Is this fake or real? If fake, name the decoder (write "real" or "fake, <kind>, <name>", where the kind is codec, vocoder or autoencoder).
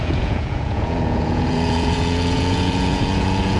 fake, vocoder, Vocos